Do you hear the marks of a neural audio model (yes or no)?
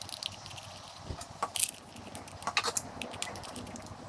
no